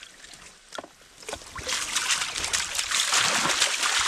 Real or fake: real